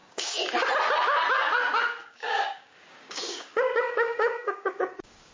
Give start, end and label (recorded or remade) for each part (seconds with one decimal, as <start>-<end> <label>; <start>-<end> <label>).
0.0-0.6 remade; 0.6-2.0 recorded; 2.0-5.3 remade